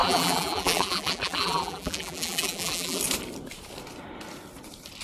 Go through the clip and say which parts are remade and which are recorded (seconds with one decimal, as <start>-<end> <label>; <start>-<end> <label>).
0.0-3.0 remade; 3.0-5.0 recorded